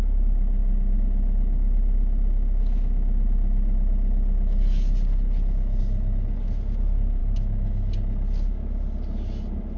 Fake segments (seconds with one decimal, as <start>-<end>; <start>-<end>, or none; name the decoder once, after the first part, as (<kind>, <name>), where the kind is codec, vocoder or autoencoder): 7.2-7.9 (autoencoder, DAC-VAE)